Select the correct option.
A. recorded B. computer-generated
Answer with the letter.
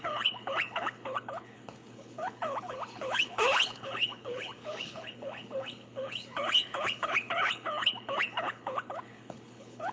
B